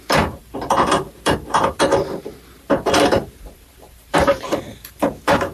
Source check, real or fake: fake